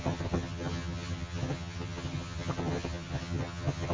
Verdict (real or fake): fake